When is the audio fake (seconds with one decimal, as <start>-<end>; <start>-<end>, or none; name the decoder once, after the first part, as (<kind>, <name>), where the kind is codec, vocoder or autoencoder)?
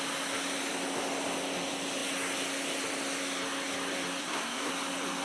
4.2-4.7 (codec, SNAC)